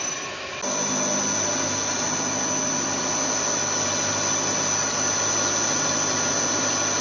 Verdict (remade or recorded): recorded